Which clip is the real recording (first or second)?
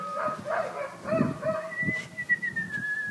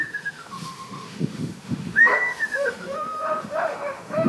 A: first